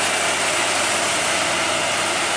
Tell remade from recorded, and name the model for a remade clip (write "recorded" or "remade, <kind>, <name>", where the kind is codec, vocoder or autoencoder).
recorded